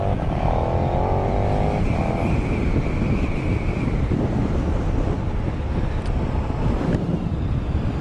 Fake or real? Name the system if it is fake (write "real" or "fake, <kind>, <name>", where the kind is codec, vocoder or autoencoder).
real